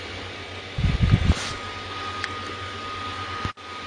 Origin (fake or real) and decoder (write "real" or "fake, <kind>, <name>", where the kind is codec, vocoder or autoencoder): real